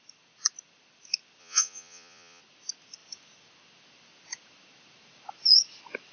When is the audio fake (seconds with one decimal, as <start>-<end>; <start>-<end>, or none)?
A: 1.4-2.4